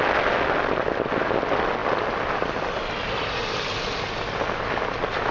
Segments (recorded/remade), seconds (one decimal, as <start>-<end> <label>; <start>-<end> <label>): 0.0-5.3 recorded